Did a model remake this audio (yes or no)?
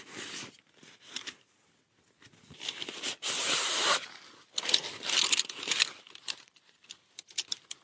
no